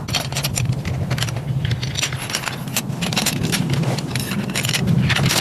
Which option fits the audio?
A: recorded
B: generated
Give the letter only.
A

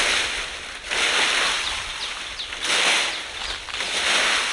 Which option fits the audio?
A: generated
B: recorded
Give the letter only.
B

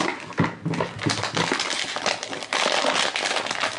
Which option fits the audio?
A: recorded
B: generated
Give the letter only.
A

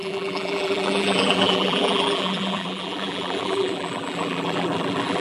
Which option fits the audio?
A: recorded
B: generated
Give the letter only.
B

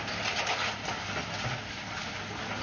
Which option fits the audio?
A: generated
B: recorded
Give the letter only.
B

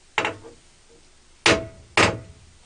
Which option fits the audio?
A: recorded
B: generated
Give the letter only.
A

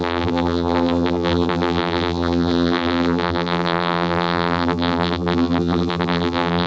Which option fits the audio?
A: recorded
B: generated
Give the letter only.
B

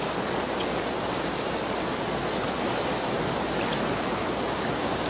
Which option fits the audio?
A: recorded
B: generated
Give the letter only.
A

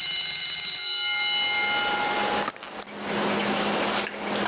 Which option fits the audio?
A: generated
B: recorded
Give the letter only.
B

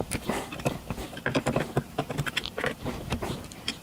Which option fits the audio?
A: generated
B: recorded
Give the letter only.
A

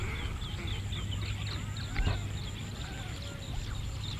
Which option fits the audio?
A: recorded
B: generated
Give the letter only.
A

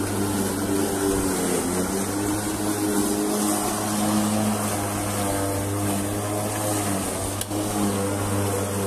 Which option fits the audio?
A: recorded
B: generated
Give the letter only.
A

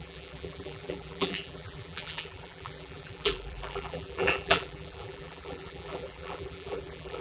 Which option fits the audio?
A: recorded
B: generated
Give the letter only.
B